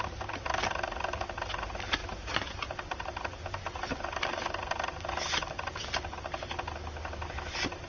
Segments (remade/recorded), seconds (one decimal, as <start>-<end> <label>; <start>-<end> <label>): 0.0-7.9 recorded